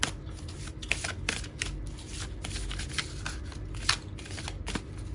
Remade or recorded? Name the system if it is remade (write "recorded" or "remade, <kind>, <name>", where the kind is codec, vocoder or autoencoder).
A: recorded